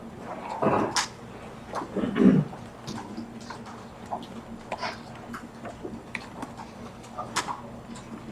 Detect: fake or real real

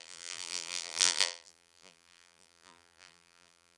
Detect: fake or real fake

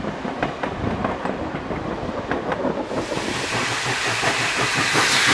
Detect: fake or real fake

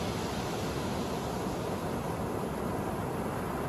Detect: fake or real real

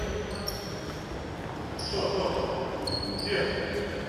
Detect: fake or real real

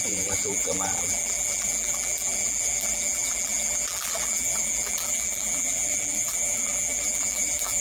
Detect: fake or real fake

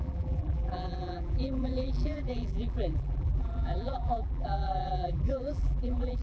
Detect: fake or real fake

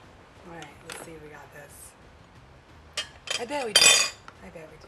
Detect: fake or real real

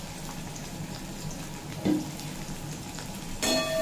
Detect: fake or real real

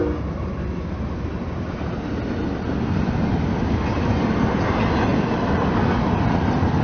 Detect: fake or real real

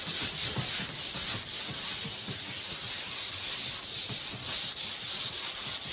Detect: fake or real fake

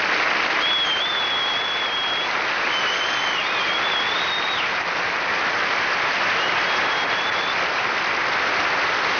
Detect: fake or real real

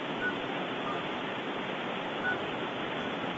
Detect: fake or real fake